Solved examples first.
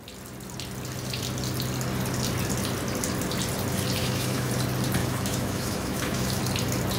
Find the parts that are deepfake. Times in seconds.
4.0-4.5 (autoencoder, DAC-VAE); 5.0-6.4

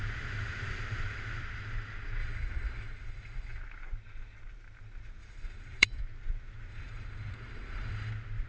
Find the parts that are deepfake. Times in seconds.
2.2-3.6 (vocoder, Vocos); 5.2-6.0; 6.7-8.1